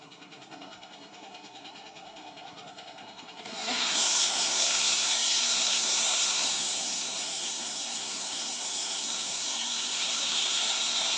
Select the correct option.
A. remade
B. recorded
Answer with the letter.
A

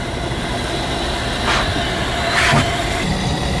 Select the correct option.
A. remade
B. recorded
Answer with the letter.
B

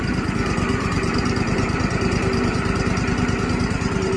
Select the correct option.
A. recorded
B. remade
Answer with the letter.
B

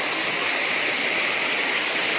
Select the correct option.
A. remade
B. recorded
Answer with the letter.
B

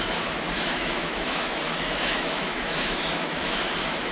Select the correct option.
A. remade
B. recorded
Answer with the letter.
A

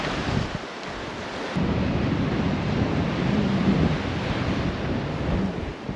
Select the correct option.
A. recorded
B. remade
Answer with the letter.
A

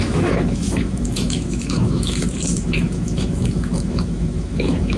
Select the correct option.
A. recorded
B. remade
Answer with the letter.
B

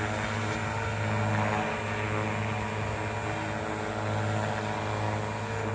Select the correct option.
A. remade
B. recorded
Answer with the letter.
B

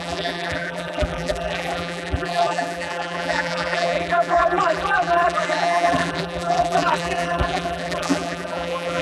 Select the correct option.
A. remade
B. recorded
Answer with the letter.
A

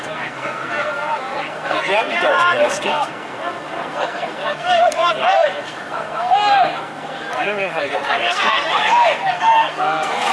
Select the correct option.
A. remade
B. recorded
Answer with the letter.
A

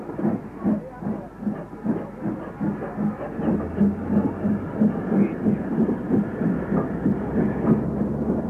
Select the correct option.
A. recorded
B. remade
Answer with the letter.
A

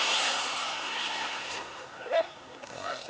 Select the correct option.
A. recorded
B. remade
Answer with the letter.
B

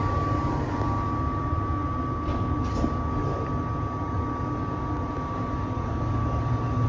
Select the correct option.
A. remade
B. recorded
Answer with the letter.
B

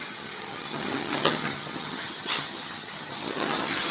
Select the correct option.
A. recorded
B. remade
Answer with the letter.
B